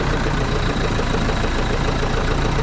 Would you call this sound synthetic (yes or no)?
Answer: yes